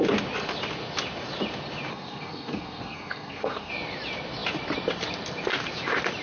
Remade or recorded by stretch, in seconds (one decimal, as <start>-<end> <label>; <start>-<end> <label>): 0.0-1.9 recorded; 1.9-3.7 remade; 3.7-6.2 recorded

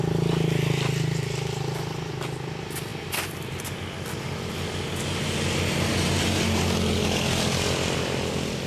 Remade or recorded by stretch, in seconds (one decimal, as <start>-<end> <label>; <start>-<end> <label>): 0.0-8.7 recorded